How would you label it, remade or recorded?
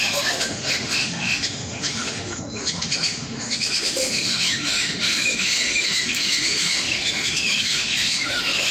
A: remade